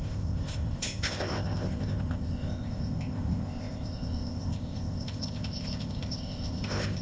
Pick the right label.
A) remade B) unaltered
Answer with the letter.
A